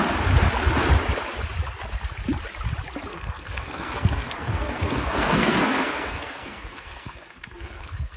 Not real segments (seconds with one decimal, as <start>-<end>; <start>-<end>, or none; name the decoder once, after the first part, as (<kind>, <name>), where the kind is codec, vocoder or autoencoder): 3.1-8.2 (codec, SNAC)